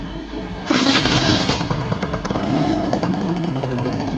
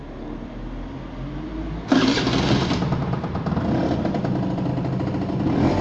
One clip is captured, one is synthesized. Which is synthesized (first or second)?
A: first